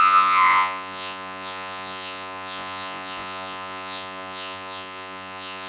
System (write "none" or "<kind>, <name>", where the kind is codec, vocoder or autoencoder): vocoder, Vocos